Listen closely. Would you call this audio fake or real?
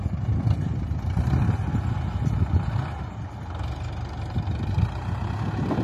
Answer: real